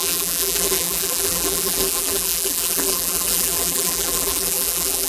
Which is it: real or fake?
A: fake